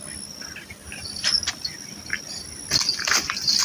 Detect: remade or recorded recorded